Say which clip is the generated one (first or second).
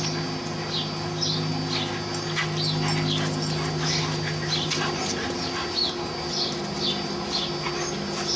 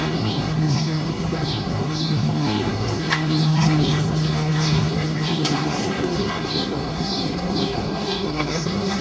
second